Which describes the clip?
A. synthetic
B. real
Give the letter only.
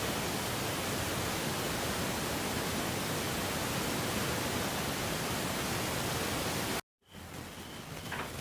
B